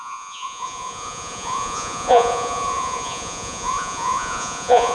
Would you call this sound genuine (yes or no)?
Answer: no